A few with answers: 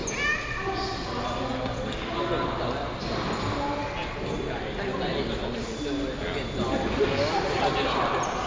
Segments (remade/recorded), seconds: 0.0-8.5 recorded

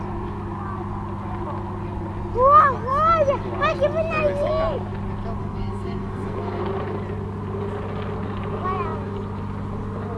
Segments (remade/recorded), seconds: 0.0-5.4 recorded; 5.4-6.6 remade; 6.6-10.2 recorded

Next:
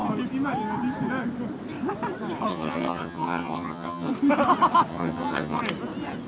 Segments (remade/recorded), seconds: 0.0-2.5 recorded; 2.5-4.1 remade; 4.1-4.9 recorded; 4.9-5.6 remade; 5.6-6.3 recorded